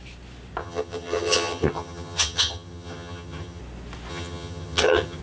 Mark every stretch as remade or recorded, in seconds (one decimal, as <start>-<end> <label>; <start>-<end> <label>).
0.0-0.6 recorded; 0.6-3.6 remade; 3.6-4.1 recorded; 4.1-5.2 remade